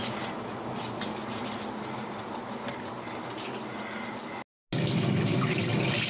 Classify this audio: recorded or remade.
recorded